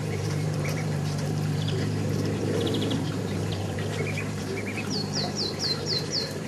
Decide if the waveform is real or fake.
fake